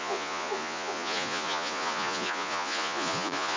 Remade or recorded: remade